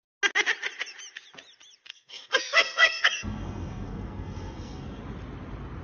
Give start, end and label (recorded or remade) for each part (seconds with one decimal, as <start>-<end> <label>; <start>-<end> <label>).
0.0-1.9 recorded; 1.9-5.0 remade; 5.0-5.8 recorded